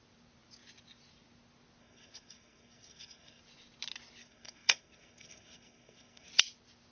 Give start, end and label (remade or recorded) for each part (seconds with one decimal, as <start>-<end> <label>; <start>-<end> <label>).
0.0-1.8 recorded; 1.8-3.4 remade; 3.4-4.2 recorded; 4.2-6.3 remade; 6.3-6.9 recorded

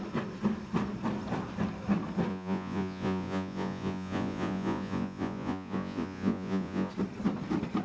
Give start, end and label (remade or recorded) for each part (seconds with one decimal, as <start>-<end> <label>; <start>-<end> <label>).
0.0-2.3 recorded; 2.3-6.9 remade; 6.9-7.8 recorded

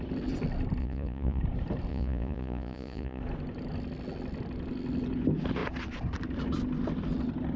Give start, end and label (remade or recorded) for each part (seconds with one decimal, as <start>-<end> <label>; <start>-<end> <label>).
0.0-0.8 recorded; 0.8-1.4 remade; 1.4-1.9 recorded; 1.9-3.2 remade; 3.2-7.6 recorded